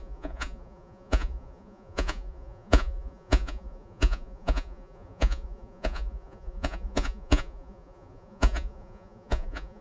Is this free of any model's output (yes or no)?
no